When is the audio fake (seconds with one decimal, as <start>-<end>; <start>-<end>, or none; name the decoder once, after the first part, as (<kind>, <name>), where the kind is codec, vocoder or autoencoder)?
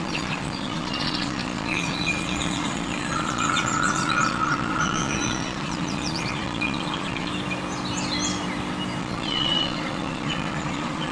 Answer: 0.0-7.3 (vocoder, Vocos); 9.0-11.1